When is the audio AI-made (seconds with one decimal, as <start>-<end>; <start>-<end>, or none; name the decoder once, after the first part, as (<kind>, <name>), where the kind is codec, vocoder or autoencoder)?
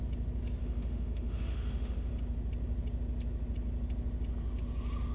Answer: 0.6-2.1 (autoencoder, DAC-VAE)